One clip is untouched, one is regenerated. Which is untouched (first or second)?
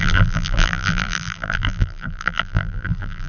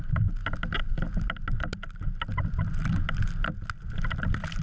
second